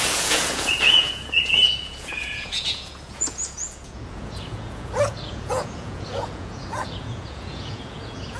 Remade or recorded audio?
remade